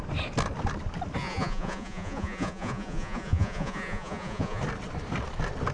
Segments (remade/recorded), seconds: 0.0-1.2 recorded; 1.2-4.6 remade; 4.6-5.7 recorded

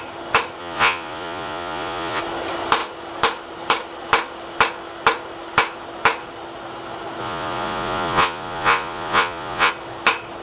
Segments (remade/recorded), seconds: 0.0-0.6 recorded; 0.6-2.2 remade; 2.2-7.2 recorded; 7.2-9.7 remade; 9.7-10.4 recorded

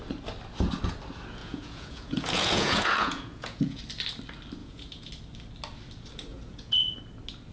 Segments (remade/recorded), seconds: 0.0-1.4 recorded; 1.4-3.8 remade; 3.8-4.6 recorded; 4.6-5.1 remade; 5.1-6.3 recorded; 6.3-7.0 remade; 7.0-7.5 recorded

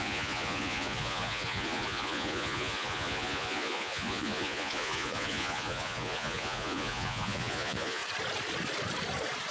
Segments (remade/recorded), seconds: 0.0-8.0 remade; 8.0-9.5 recorded

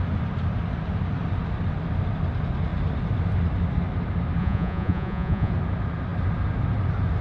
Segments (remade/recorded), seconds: 0.0-4.4 recorded; 4.4-5.5 remade; 5.5-7.2 recorded

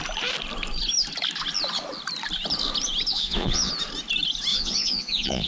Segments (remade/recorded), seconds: 0.0-3.1 recorded; 3.1-3.7 remade; 3.7-4.5 recorded; 4.5-5.5 remade